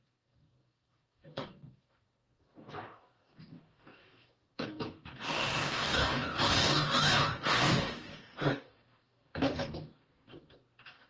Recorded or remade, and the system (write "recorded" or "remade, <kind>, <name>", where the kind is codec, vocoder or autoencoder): remade, codec, DAC